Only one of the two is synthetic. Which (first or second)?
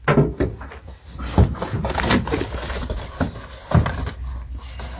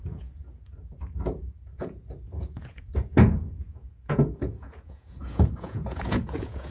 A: second